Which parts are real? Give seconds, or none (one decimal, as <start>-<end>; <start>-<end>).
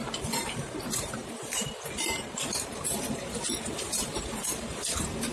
none